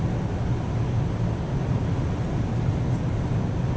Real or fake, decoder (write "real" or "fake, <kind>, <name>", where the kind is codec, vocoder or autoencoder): real